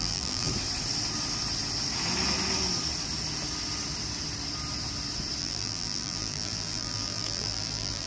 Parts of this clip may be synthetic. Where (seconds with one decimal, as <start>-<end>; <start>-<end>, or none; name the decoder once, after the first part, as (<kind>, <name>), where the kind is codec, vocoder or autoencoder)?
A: 0.0-0.5 (vocoder, BigVGAN v2); 5.4-8.1